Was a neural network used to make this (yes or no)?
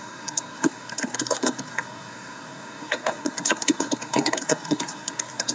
yes